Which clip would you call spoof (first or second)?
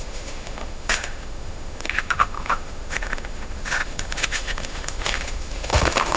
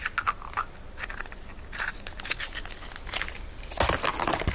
first